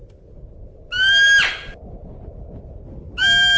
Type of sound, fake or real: real